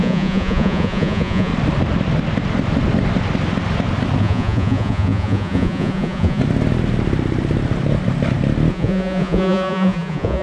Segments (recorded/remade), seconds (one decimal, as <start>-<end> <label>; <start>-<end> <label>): 0.0-1.5 remade; 1.5-4.2 recorded; 4.2-6.4 remade; 6.4-8.7 recorded; 8.7-10.4 remade